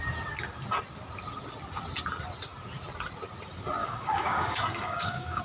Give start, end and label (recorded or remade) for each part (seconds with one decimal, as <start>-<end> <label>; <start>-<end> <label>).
0.0-3.8 recorded; 3.8-5.4 remade